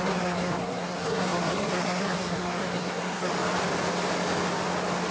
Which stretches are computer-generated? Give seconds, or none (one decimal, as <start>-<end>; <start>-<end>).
0.0-3.3